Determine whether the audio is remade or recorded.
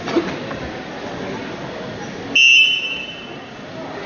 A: recorded